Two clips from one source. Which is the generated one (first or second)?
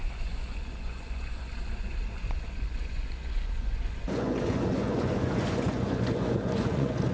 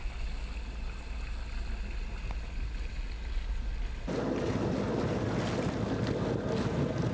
first